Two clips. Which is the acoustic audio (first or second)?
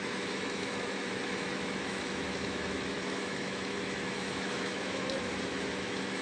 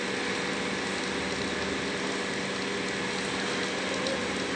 second